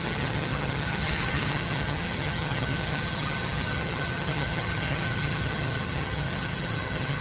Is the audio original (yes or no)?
no